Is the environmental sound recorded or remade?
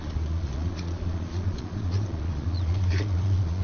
remade